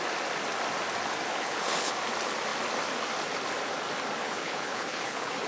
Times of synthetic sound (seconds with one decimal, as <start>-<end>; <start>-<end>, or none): 1.3-1.9; 4.2-5.5